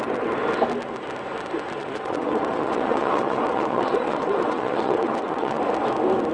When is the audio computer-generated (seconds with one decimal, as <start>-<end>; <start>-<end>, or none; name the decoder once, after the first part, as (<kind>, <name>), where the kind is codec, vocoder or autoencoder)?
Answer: 1.8-5.6 (vocoder, WaveNeXt)

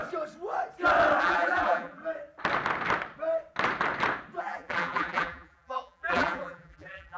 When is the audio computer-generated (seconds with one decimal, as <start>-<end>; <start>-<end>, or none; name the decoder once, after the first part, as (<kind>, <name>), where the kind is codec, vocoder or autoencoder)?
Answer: 1.2-2.0 (vocoder, BigVGAN v2); 4.4-7.2